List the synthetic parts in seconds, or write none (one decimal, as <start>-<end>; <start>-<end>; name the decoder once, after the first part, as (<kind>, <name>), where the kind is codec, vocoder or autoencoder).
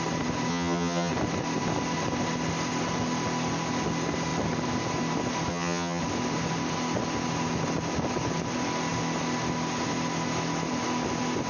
0.5-1.1 (vocoder, HiFi-GAN); 5.5-6.0